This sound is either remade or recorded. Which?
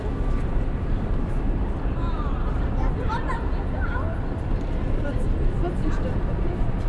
recorded